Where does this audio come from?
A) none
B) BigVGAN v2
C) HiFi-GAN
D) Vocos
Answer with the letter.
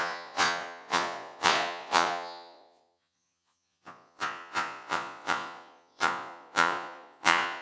D